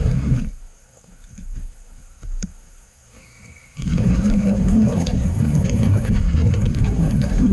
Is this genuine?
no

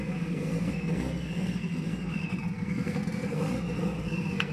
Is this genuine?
no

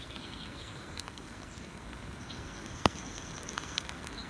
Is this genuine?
no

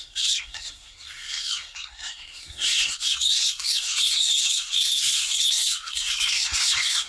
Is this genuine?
no